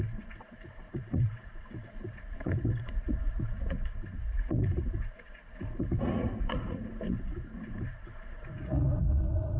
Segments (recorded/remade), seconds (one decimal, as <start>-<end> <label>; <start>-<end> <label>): 0.0-9.6 remade